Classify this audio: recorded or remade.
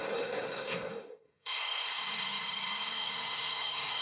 remade